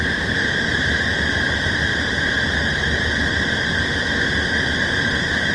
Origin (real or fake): real